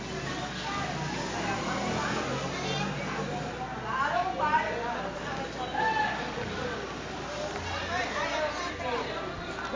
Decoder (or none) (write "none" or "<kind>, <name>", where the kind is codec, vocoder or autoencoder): none